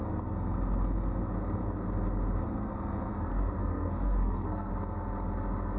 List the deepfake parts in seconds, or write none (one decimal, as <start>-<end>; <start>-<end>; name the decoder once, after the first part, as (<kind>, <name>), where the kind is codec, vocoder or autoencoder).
3.6-4.7 (codec, SNAC)